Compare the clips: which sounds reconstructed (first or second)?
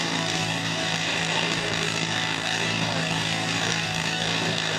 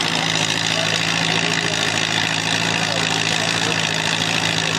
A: first